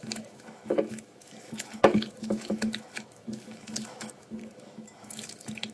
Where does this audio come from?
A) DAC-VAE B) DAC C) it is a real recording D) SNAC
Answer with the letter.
A